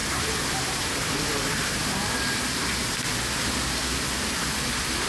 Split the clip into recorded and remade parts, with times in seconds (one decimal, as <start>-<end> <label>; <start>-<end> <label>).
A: 0.0-5.1 recorded